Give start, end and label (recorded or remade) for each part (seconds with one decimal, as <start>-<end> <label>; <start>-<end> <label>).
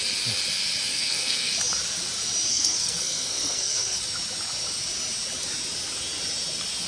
0.0-0.9 recorded; 0.9-1.5 remade; 1.5-2.5 recorded; 2.5-4.0 remade; 4.0-6.9 recorded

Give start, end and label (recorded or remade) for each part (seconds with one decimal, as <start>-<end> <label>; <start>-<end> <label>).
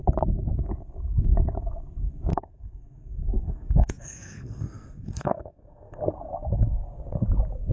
0.0-2.3 recorded; 2.3-6.0 remade; 6.0-7.7 recorded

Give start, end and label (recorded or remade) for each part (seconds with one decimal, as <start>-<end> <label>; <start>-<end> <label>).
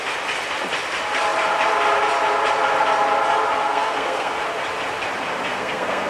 0.0-3.6 recorded; 3.6-4.3 remade; 4.3-5.5 recorded; 5.5-6.1 remade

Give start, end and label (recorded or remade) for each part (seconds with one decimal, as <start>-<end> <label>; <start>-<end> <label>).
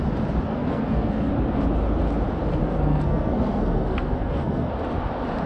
0.0-0.5 recorded; 0.5-1.3 remade; 1.3-2.6 recorded; 2.6-4.7 remade; 4.7-5.5 recorded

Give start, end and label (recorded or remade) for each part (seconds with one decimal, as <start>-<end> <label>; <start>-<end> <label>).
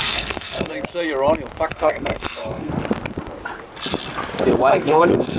0.0-0.7 remade; 0.7-1.7 recorded; 1.7-2.7 remade; 2.7-4.7 recorded; 4.7-5.4 remade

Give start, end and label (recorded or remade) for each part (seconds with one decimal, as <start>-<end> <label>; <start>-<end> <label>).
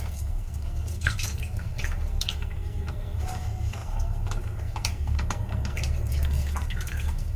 0.0-7.4 remade